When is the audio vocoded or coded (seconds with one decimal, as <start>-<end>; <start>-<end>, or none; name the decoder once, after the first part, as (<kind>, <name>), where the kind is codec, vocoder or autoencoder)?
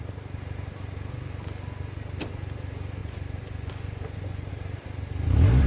3.0-4.5 (vocoder, Vocos)